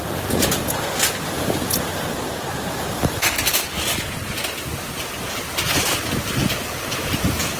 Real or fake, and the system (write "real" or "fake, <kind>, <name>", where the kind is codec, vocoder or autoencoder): real